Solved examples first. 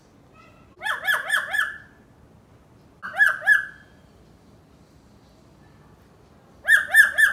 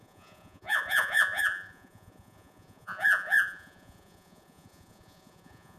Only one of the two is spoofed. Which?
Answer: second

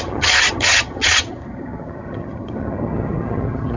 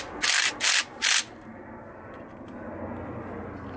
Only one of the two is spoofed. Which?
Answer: first